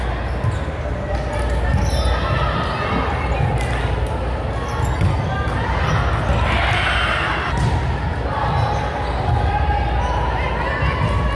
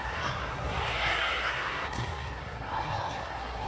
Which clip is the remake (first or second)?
second